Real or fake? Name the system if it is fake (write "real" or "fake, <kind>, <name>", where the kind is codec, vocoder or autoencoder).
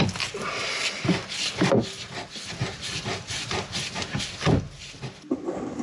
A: real